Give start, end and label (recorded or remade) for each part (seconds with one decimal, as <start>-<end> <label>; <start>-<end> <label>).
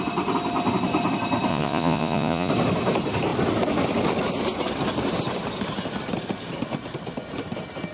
0.0-1.5 recorded; 1.5-2.5 remade; 2.5-7.9 recorded